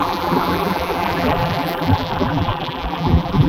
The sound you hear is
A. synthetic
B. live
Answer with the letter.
A